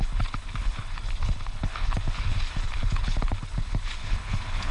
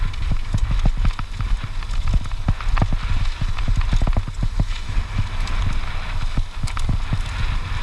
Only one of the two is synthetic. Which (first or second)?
first